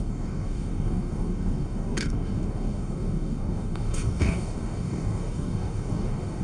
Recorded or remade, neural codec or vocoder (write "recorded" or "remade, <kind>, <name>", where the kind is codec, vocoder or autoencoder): remade, codec, DAC